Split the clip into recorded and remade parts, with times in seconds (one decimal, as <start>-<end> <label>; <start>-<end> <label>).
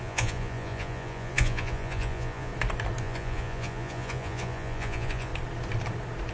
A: 0.0-2.5 remade; 2.5-3.0 recorded; 3.0-5.3 remade; 5.3-6.3 recorded